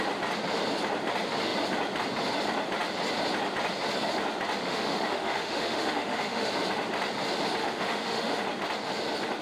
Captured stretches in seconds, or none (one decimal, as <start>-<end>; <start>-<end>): 0.0-4.7; 6.5-7.6; 8.4-9.4